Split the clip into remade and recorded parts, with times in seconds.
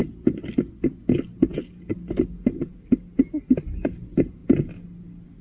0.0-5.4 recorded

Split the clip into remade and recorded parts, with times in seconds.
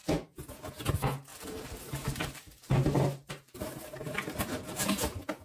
0.0-1.3 recorded; 1.3-4.5 remade; 4.5-5.4 recorded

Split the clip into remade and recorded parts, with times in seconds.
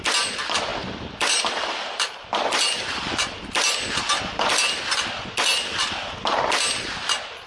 0.0-0.7 recorded; 0.7-5.2 remade; 5.2-7.5 recorded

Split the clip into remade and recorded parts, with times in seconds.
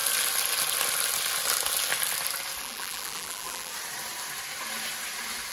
0.0-2.6 recorded; 2.6-3.7 remade; 3.7-5.5 recorded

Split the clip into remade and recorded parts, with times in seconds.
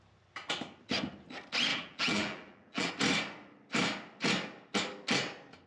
0.0-1.7 recorded; 1.7-2.9 remade; 2.9-5.7 recorded